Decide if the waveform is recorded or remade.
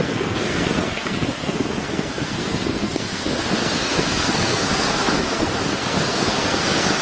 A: remade